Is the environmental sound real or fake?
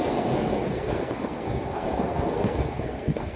fake